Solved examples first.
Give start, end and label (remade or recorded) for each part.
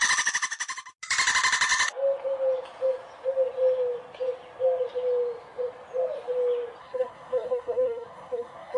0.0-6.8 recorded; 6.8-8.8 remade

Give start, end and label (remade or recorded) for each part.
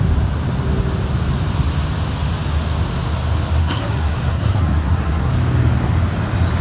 0.0-3.6 recorded; 3.6-5.3 remade; 5.3-6.6 recorded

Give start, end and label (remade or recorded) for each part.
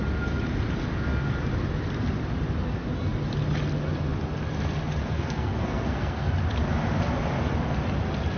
0.0-5.0 recorded; 5.0-6.3 remade; 6.3-8.4 recorded